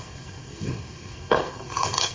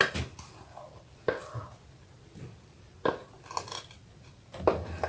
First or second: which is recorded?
second